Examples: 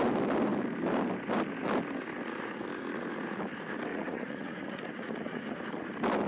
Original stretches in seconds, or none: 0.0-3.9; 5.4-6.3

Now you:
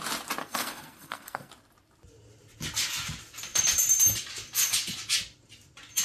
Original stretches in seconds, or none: 0.0-0.4; 1.5-6.0